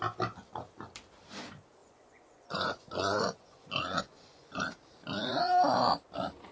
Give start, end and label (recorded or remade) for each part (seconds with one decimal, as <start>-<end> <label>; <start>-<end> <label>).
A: 0.0-1.8 recorded; 1.8-4.6 remade; 4.6-5.3 recorded; 5.3-5.9 remade; 5.9-6.5 recorded